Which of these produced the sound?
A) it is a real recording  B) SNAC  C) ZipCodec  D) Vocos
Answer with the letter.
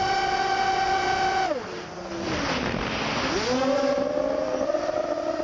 A